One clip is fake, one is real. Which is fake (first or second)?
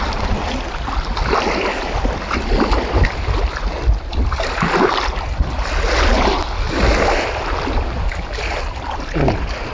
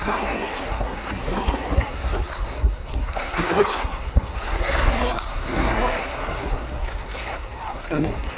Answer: second